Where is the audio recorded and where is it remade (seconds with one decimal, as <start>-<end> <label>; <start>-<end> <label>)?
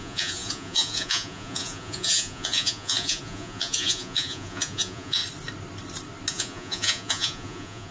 0.0-5.2 remade; 5.2-6.3 recorded; 6.3-7.9 remade